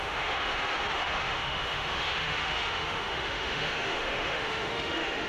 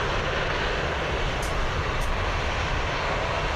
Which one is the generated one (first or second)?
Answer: first